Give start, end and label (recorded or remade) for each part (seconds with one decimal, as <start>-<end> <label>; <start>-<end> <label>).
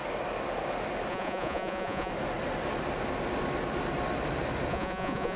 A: 0.0-1.1 recorded; 1.1-2.1 remade; 2.1-4.7 recorded; 4.7-5.4 remade